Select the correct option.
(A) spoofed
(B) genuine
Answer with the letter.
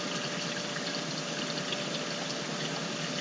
B